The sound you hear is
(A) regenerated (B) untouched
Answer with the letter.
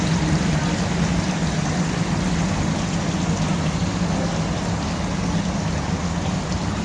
B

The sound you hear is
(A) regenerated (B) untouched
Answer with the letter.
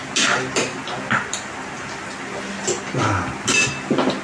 B